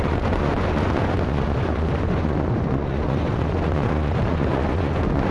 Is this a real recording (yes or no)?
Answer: no